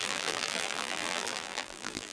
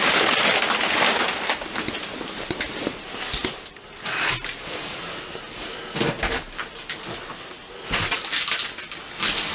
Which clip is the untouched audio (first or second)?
second